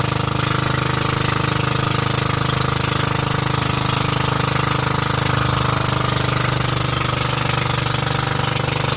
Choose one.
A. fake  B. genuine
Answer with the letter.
B